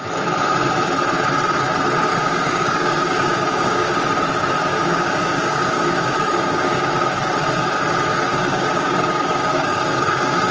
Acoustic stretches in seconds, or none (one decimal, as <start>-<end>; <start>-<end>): 0.0-2.1; 3.9-4.7; 6.9-8.3